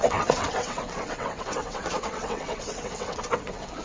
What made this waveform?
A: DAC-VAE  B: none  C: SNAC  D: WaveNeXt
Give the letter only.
D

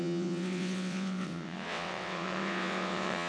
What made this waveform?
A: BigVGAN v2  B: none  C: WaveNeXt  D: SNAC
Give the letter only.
C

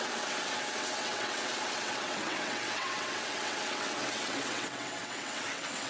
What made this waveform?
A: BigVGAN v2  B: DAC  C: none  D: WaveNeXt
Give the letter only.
D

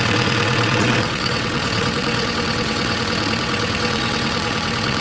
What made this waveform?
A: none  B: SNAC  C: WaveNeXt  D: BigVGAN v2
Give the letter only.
C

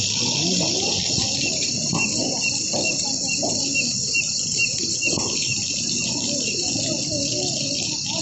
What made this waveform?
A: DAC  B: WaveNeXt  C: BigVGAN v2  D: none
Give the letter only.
D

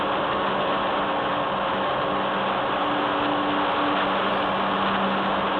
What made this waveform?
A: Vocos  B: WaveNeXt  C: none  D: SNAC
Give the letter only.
C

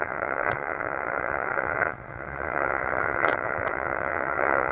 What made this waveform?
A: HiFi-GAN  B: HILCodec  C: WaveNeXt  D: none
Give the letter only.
C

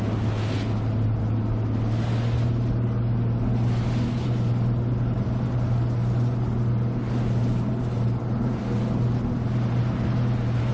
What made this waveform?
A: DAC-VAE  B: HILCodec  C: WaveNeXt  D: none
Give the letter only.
D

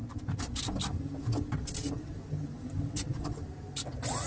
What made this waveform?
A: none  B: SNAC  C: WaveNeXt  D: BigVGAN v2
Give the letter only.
A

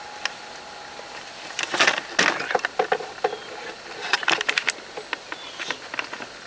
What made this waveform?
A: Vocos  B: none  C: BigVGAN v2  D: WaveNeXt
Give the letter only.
B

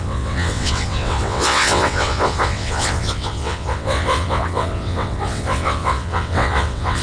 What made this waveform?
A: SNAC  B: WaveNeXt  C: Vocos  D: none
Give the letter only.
B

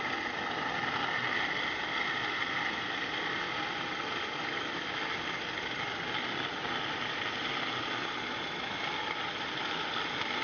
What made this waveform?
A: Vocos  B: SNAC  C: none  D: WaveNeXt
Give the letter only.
C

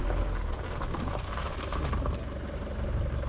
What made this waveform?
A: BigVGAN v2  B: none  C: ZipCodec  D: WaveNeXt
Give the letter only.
B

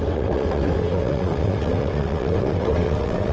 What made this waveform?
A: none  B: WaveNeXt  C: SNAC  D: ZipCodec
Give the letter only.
B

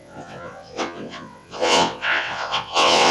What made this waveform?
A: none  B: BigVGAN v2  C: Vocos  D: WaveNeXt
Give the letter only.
D